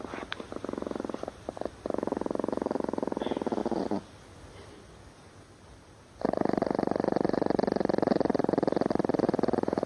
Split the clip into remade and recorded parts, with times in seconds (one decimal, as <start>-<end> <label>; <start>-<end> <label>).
0.0-9.9 recorded